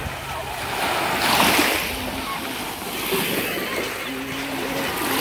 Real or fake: real